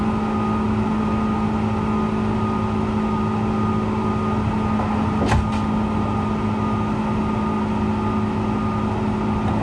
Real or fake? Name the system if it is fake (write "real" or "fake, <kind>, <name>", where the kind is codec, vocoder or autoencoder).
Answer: real